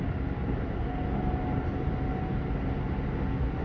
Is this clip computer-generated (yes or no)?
no